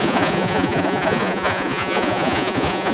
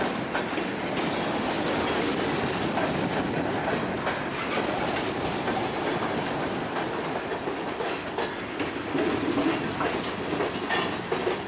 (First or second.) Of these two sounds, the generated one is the first